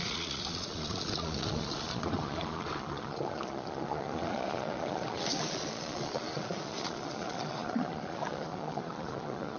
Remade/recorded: remade